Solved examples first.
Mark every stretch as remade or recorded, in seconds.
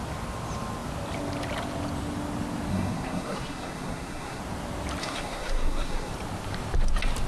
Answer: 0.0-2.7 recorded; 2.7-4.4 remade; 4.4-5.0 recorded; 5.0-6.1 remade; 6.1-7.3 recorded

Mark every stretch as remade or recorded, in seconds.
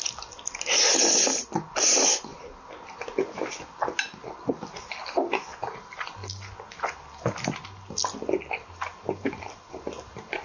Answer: 0.0-10.4 recorded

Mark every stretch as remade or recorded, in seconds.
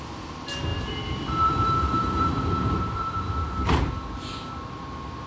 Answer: 0.0-0.7 recorded; 0.7-3.9 remade; 3.9-5.3 recorded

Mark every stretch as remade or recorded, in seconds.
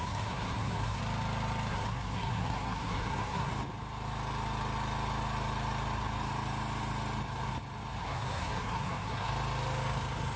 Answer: 0.0-1.0 remade; 1.0-1.7 recorded; 1.7-3.5 remade; 3.5-8.0 recorded; 8.0-9.3 remade; 9.3-10.4 recorded